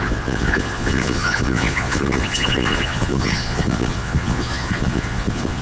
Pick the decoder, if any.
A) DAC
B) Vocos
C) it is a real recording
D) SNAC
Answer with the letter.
B